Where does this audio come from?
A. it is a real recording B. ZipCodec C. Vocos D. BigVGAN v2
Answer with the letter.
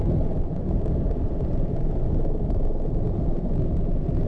A